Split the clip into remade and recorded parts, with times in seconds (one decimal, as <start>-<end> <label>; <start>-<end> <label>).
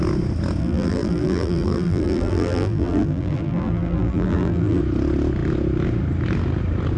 0.0-0.6 recorded; 0.6-4.8 remade; 4.8-7.0 recorded